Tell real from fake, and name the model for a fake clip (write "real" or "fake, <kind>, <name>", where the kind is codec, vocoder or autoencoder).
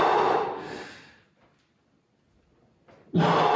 real